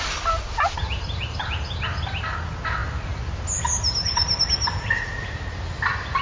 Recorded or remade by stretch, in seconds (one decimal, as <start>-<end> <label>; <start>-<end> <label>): 0.0-6.2 recorded